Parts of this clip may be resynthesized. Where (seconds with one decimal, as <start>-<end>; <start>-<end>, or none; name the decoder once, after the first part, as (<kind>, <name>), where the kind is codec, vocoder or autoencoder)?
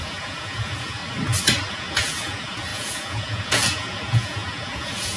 0.0-1.0 (vocoder, Vocos); 1.7-5.2